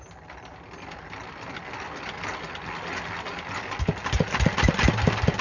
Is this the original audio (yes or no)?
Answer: yes